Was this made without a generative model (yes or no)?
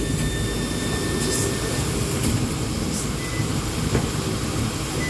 yes